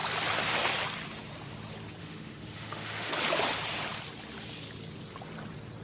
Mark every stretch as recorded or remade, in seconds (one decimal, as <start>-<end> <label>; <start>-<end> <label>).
0.0-2.0 recorded; 2.0-3.1 remade; 3.1-5.8 recorded